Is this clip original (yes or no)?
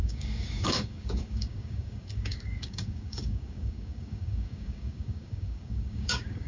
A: no